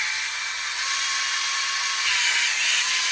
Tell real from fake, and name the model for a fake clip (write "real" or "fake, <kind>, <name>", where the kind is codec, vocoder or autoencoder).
real